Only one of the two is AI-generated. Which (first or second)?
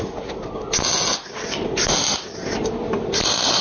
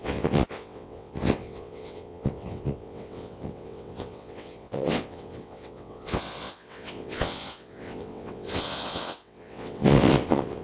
second